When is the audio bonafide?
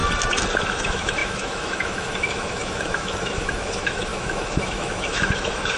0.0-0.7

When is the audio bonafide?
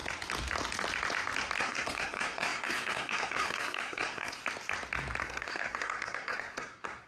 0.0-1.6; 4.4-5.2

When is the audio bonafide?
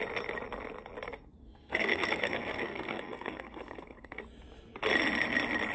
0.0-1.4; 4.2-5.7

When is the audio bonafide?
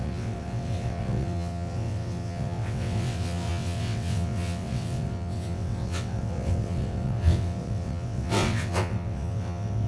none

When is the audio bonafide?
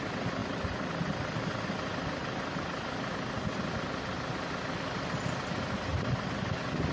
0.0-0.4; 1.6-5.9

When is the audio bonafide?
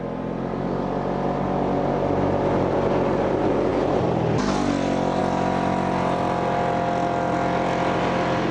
0.0-8.5